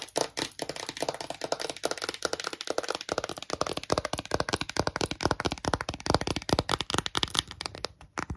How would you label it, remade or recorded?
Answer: recorded